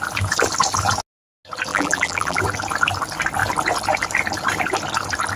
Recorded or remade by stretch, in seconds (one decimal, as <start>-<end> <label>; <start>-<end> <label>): 0.0-1.7 recorded; 1.7-2.4 remade; 2.4-5.4 recorded